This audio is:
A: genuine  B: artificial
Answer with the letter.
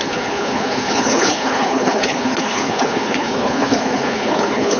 B